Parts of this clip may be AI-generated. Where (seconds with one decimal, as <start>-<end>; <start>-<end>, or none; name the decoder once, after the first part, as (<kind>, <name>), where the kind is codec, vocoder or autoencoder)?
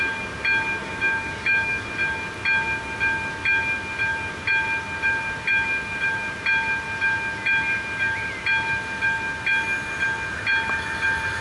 0.8-1.9 (autoencoder, DAC-VAE)